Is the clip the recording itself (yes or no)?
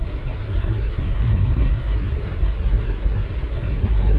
no